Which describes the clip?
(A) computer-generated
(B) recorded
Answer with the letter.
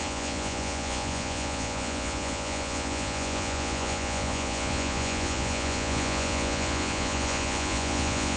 A